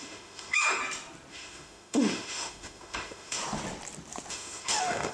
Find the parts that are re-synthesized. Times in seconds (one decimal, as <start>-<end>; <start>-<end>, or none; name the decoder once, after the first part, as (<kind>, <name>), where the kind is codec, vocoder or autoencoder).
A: 0.0-0.8 (autoencoder, DAC-VAE); 1.3-3.4; 4.3-5.1